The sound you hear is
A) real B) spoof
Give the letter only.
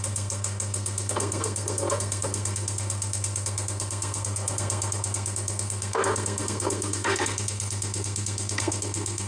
B